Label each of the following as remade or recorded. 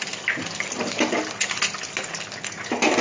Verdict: recorded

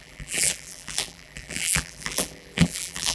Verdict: remade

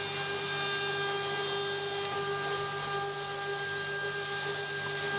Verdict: recorded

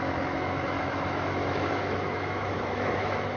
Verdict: remade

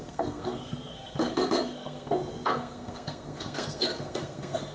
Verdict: remade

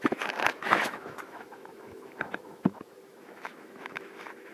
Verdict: remade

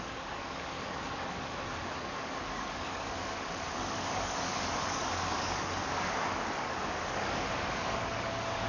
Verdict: remade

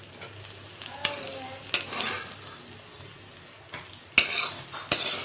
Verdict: recorded